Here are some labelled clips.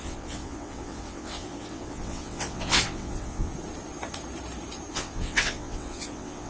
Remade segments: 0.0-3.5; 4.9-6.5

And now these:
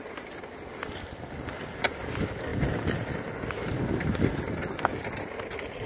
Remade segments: none

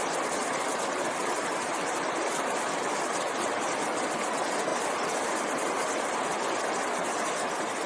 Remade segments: none

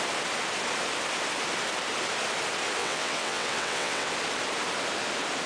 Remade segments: 2.8-4.1

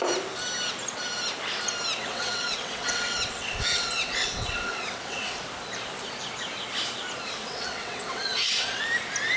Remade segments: 2.0-5.4; 7.4-8.8